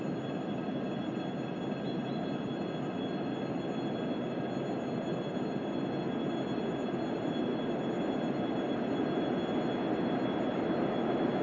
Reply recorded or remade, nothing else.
recorded